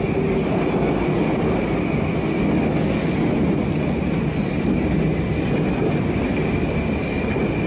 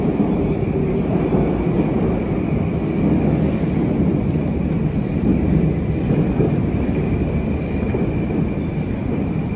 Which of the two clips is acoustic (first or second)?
first